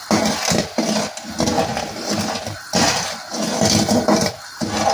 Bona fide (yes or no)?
yes